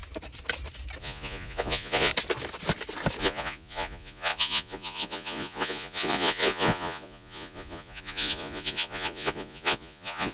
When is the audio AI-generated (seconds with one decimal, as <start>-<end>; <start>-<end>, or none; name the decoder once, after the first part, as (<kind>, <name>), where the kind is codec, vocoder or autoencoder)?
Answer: 1.0-2.1 (vocoder, Vocos); 3.2-10.3